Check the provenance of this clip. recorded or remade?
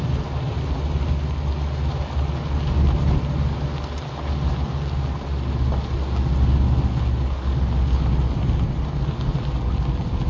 recorded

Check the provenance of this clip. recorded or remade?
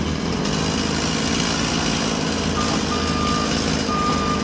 recorded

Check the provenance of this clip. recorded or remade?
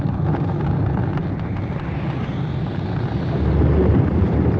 recorded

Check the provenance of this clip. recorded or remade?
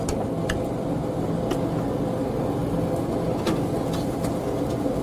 recorded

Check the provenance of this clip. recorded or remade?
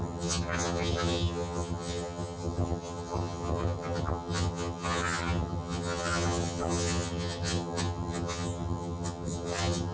remade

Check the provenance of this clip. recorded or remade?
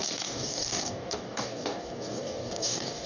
remade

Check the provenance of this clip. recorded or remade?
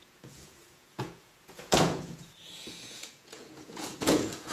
remade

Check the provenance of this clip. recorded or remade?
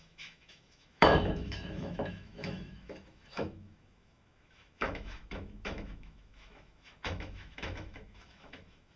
remade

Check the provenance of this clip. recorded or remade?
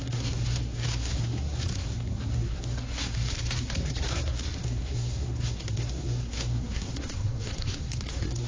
remade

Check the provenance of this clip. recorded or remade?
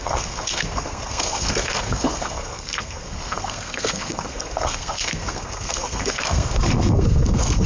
remade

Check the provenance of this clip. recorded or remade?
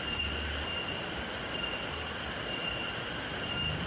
recorded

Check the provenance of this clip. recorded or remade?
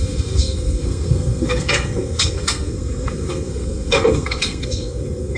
remade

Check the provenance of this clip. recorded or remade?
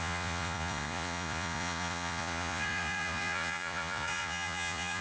remade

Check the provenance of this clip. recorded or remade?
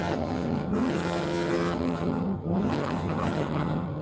remade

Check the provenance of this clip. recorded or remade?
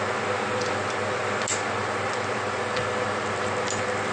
recorded